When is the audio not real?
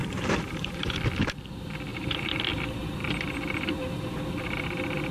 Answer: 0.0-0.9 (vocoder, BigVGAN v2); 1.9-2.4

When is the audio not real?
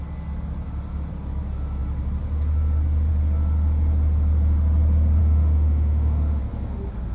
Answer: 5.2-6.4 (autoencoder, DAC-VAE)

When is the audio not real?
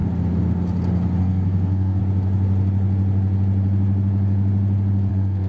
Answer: 1.2-2.0 (codec, SNAC); 5.1-5.5